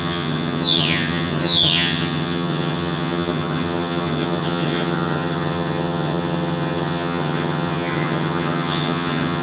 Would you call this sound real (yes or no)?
no